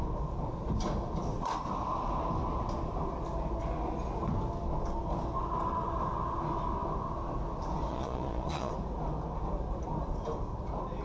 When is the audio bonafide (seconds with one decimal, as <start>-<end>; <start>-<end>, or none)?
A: 0.0-7.9; 8.7-11.0